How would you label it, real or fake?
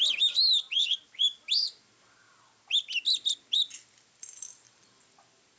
real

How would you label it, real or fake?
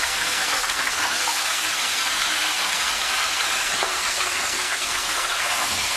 fake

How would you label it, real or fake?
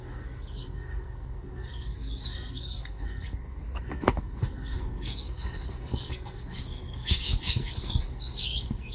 fake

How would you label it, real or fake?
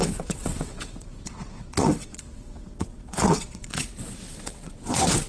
fake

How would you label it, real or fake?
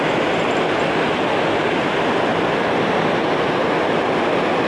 real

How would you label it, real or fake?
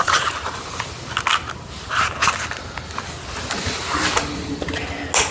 real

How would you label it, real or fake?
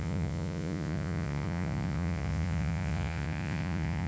fake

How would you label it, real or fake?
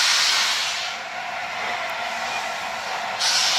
real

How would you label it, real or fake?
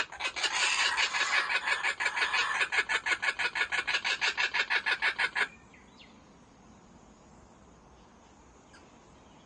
real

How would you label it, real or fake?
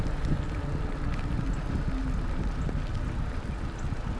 real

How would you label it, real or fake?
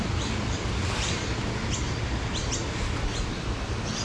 real